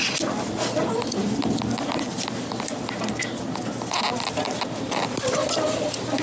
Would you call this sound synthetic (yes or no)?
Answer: no